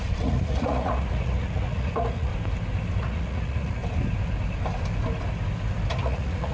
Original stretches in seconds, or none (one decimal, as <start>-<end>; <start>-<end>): 2.3-3.0; 3.8-5.9